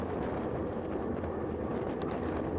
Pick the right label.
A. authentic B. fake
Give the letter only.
A